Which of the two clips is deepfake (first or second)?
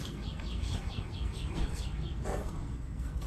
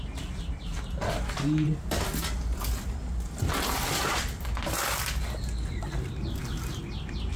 first